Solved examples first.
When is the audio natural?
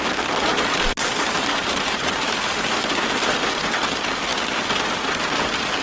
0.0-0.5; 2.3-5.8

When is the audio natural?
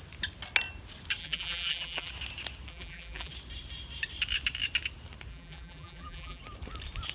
0.0-1.2; 2.1-2.7; 3.3-5.3; 6.4-7.1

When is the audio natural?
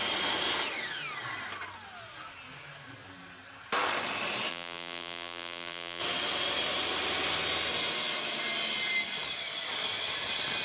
0.0-4.5; 6.0-10.6